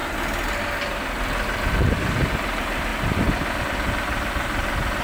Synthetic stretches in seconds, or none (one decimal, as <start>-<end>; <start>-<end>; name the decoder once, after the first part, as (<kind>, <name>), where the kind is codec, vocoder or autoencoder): 1.7-2.9 (vocoder, BigVGAN v2); 3.6-5.0